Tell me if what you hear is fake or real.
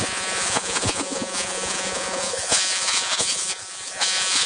fake